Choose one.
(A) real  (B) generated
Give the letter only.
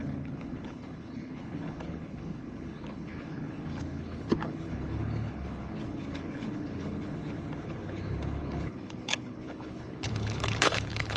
B